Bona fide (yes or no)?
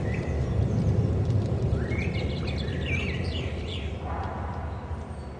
yes